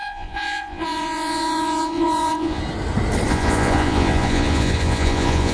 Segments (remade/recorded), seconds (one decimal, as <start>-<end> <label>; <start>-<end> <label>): 0.0-2.6 remade; 2.6-3.3 recorded; 3.3-5.5 remade

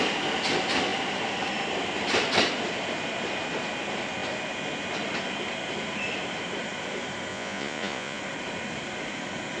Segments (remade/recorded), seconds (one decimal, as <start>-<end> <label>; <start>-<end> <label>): 0.0-7.3 recorded; 7.3-8.2 remade; 8.2-9.6 recorded

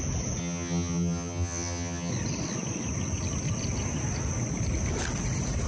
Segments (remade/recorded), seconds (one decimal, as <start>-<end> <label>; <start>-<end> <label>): 0.0-0.4 recorded; 0.4-2.1 remade; 2.1-5.7 recorded